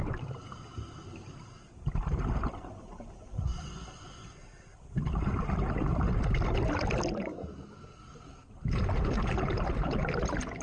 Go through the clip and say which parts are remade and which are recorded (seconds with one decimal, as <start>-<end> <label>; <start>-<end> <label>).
0.0-10.6 recorded